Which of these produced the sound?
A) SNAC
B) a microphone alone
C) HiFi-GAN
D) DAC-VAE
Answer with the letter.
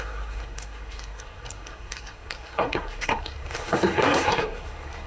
A